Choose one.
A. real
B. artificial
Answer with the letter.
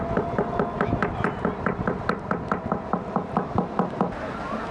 A